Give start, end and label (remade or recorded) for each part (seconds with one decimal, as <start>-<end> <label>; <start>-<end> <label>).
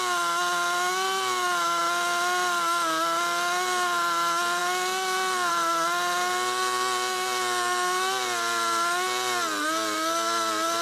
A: 0.0-10.8 recorded